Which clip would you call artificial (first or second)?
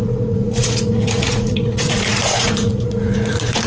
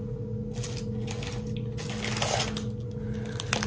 first